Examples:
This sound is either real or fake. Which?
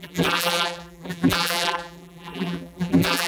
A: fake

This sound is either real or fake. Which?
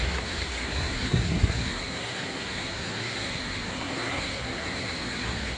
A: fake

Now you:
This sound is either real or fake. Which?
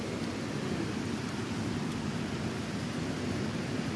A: real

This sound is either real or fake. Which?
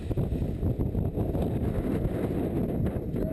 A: real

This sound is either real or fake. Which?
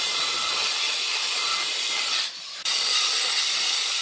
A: real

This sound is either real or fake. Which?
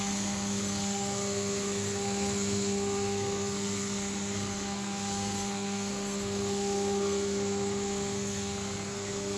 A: fake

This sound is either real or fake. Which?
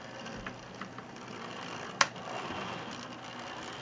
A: real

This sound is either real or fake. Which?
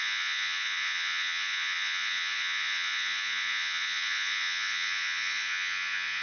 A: fake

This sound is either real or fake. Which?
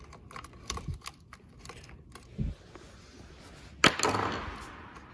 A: real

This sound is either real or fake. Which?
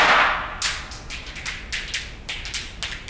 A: real